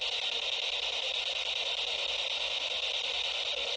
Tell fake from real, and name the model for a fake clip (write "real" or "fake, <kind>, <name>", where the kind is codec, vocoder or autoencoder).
real